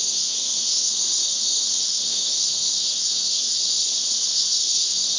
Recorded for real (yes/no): no